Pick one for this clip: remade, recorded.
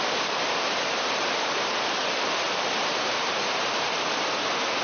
remade